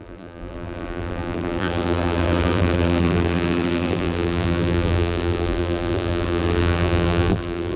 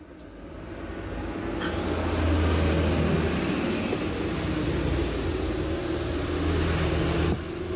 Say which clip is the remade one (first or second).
first